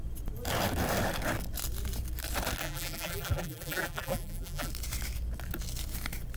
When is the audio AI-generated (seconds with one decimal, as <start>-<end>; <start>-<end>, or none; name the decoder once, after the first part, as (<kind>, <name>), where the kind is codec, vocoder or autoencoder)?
2.6-4.7 (vocoder, BigVGAN v2)